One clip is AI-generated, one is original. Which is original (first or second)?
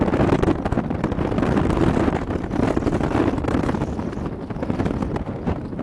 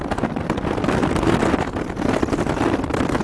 first